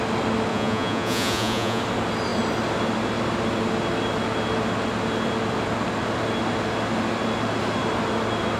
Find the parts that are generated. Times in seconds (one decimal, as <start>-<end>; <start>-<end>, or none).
0.5-1.8